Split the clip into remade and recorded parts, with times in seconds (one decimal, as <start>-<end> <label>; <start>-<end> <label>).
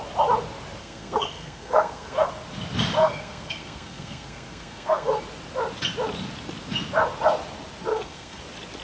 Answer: 0.0-0.8 recorded; 0.8-2.3 remade; 2.3-3.0 recorded; 3.0-5.2 remade; 5.2-7.9 recorded; 7.9-8.4 remade; 8.4-8.8 recorded